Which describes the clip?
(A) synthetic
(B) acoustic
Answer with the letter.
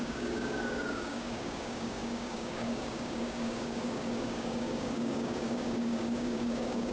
A